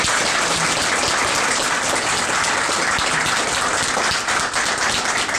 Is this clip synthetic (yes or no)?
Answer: no